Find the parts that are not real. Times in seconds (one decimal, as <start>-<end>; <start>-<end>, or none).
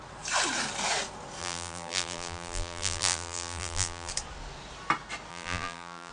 1.4-4.1; 5.3-6.1